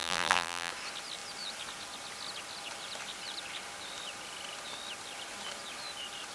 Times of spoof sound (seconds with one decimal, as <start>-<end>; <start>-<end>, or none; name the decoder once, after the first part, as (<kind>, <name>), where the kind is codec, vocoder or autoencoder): 0.0-0.7 (vocoder, BigVGAN v2)